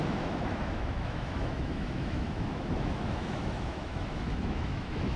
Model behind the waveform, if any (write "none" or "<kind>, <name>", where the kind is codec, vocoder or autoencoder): autoencoder, DAC-VAE